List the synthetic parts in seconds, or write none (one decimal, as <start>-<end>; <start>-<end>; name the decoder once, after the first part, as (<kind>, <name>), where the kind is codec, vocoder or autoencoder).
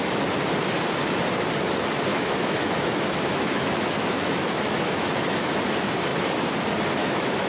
2.1-5.5 (autoencoder, DAC-VAE); 7.0-7.5